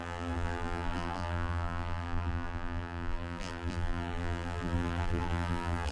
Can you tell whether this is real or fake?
fake